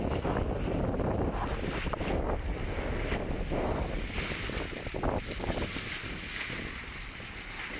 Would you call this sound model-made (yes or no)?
no